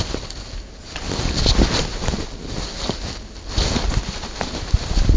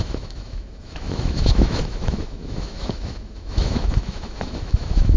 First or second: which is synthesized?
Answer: second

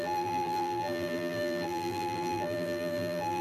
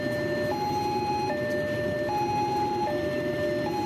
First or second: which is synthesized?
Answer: first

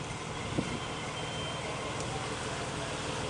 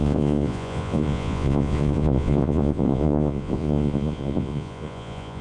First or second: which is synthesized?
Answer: second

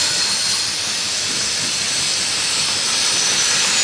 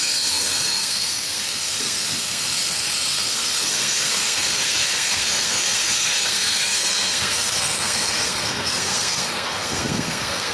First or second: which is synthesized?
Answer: second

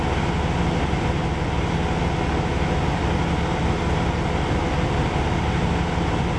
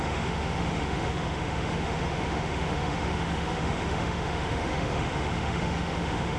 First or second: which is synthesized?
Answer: second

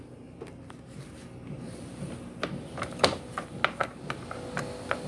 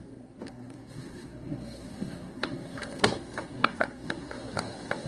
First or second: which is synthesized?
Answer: second